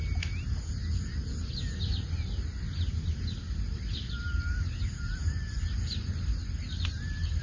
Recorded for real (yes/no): yes